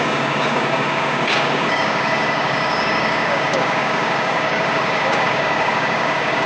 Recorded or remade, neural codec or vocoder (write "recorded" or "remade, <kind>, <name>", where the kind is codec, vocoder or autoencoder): remade, codec, DAC